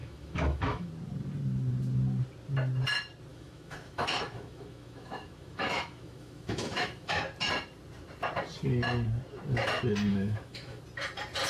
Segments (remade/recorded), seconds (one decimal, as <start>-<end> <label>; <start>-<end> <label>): 0.0-0.9 remade; 0.9-3.3 recorded; 3.3-7.2 remade; 7.2-10.1 recorded; 10.1-10.8 remade; 10.8-11.5 recorded